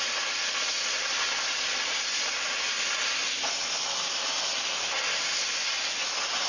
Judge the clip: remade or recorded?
recorded